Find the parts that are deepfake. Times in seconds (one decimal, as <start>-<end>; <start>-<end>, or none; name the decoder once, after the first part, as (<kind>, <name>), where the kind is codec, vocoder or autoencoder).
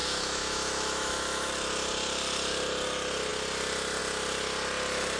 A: 0.0-1.5 (autoencoder, DAC-VAE)